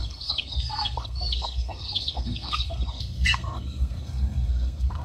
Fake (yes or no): yes